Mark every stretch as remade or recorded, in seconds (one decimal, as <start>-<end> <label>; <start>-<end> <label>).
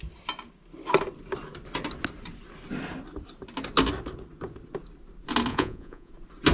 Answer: 0.0-5.5 recorded; 5.5-6.1 remade; 6.1-6.5 recorded